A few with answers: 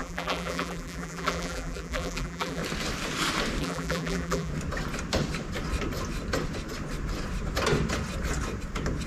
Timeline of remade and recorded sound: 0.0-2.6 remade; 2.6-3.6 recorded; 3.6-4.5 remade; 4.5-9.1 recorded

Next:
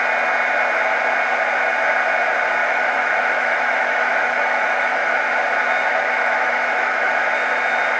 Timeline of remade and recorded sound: 0.0-2.6 recorded; 2.6-5.2 remade; 5.2-5.9 recorded; 5.9-7.3 remade; 7.3-8.0 recorded